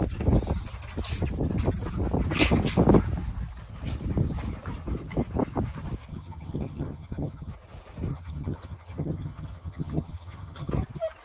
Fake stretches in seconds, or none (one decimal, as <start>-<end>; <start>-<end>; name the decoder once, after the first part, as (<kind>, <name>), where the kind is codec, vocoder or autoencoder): 6.1-7.5 (vocoder, HiFi-GAN); 8.1-10.7